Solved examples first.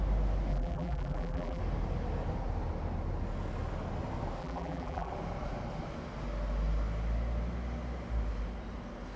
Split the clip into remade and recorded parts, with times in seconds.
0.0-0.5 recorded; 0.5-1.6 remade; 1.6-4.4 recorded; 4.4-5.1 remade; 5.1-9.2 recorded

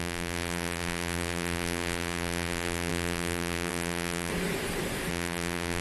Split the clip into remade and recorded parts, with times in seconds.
0.0-4.3 remade; 4.3-5.1 recorded; 5.1-5.8 remade

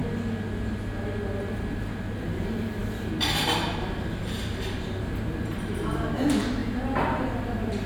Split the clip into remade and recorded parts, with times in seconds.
0.0-1.4 recorded; 1.4-7.9 remade